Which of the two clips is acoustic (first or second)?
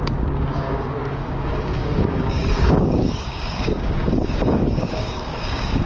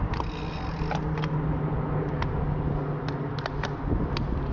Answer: second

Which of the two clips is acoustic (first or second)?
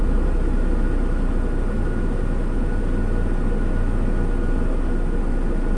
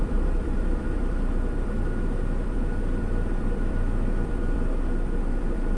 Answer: first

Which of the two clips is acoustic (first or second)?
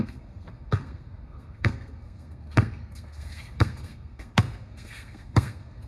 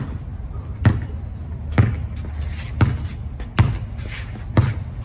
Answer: second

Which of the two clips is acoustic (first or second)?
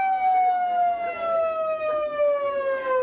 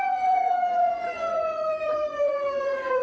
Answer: first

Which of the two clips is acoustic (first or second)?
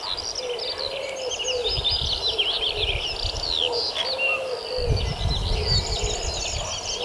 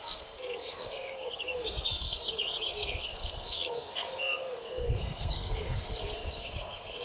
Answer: first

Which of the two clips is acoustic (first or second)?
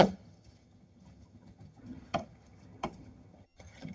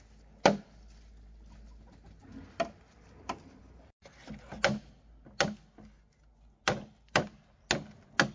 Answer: second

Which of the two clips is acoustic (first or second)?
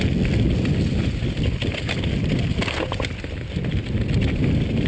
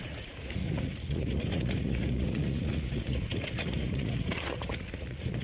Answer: first